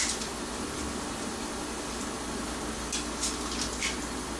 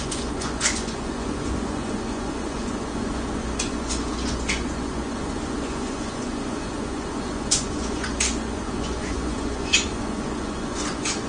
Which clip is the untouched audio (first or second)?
first